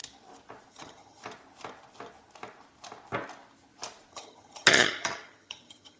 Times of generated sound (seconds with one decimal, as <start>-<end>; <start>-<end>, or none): 0.7-1.2; 4.1-6.0